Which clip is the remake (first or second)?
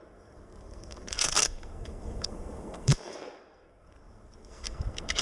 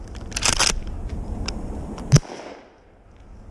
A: first